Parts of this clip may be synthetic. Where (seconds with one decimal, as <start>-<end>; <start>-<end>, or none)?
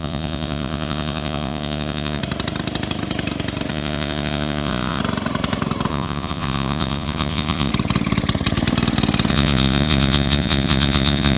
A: 0.0-2.2; 3.7-5.0; 5.9-7.7; 9.3-11.4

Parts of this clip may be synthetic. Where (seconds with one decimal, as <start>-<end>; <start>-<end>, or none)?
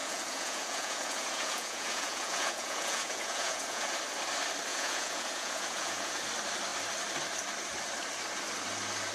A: 0.0-4.0; 4.7-6.2